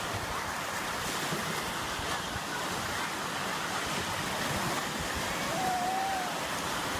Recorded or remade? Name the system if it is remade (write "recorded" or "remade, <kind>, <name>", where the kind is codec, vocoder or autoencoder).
recorded